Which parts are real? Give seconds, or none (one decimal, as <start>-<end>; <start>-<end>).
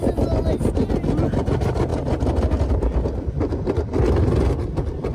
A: 0.0-5.1